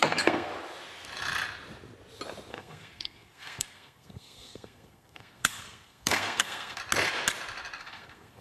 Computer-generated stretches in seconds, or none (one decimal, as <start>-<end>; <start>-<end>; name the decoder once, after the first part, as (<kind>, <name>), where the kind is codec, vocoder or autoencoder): 0.0-0.5 (codec, SNAC); 2.5-6.8; 7.8-8.4